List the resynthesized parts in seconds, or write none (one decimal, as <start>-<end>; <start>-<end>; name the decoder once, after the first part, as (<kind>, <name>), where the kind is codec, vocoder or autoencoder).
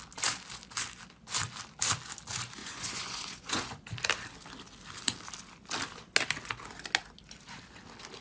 2.6-3.8 (vocoder, Vocos)